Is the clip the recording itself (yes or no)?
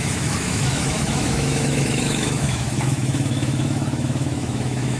no